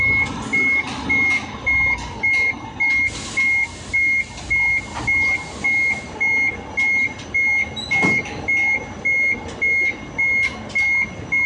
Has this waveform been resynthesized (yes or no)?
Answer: no